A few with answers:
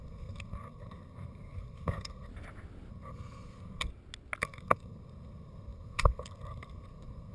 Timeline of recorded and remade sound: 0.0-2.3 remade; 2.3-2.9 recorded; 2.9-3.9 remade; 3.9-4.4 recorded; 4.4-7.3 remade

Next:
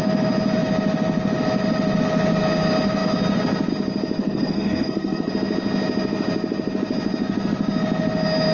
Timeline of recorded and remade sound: 0.0-4.2 recorded; 4.2-5.3 remade; 5.3-8.5 recorded